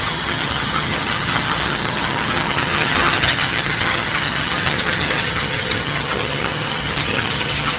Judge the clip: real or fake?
fake